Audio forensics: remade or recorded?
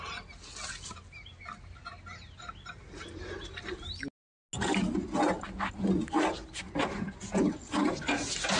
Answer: recorded